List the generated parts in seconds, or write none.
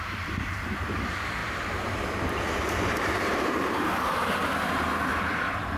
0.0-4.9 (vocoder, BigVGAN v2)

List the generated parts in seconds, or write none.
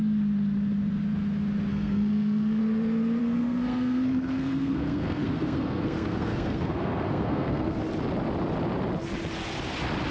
1.7-2.6 (codec, SNAC); 3.2-7.8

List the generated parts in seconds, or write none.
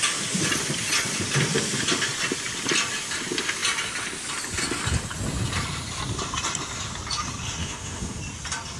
7.6-8.2 (autoencoder, DAC-VAE)